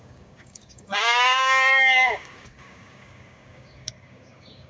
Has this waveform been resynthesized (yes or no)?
yes